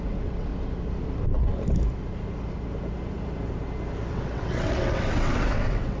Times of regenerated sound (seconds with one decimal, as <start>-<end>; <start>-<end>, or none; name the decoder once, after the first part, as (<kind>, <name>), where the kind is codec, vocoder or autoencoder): 0.0-0.5 (vocoder, WaveNeXt); 4.1-6.0